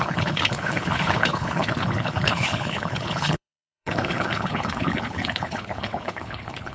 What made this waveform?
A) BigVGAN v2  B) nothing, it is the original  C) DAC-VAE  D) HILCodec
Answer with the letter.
D